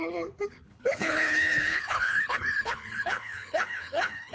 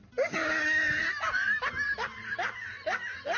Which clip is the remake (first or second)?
first